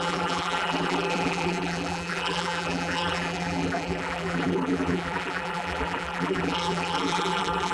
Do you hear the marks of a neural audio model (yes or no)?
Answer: yes